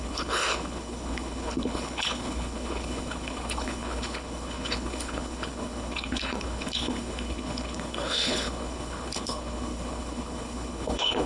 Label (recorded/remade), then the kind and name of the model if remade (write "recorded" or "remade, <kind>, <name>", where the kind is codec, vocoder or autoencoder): remade, codec, HILCodec